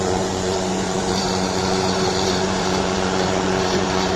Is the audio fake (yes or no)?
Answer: yes